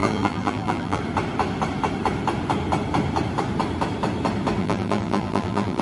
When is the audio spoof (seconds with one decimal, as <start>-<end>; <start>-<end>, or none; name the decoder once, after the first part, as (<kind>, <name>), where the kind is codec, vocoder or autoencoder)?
0.0-1.0 (vocoder, BigVGAN v2); 4.6-5.8